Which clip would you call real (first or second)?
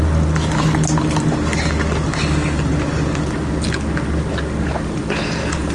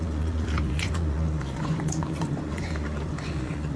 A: first